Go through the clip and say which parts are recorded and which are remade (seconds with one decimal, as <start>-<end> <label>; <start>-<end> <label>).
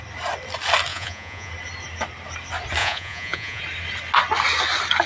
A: 0.0-0.9 recorded; 0.9-1.5 remade; 1.5-2.8 recorded; 2.8-3.6 remade; 3.6-5.1 recorded